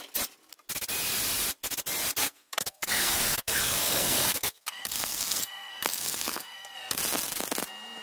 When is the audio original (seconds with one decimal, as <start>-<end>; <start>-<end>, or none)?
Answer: 0.0-2.2; 7.0-8.0